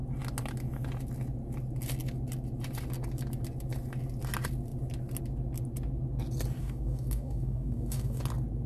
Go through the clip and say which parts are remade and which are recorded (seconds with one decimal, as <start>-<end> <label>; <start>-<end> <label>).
0.0-6.6 recorded; 6.6-8.2 remade; 8.2-8.7 recorded